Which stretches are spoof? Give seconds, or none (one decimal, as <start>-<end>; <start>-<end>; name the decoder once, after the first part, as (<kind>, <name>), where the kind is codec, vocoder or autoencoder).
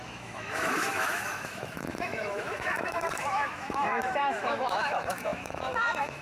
0.0-6.2 (autoencoder, DAC-VAE)